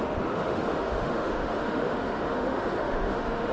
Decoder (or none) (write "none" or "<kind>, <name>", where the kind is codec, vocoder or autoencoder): autoencoder, DAC-VAE